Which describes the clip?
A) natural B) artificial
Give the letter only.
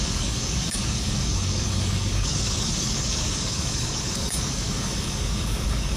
B